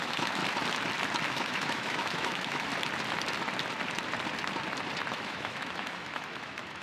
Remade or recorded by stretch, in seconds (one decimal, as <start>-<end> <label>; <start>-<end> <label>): 0.0-0.4 remade; 0.4-1.3 recorded; 1.3-2.7 remade; 2.7-5.1 recorded; 5.1-6.8 remade